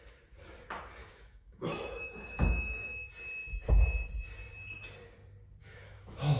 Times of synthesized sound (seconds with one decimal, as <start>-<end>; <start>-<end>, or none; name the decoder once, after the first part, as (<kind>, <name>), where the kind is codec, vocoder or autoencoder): 1.0-3.1 (autoencoder, DAC-VAE); 5.6-6.4